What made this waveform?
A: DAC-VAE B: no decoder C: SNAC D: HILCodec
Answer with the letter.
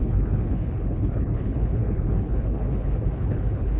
D